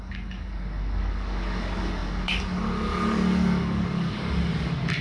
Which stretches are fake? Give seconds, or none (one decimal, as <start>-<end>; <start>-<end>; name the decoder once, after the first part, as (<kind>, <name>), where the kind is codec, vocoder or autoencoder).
0.0-5.0 (codec, DAC)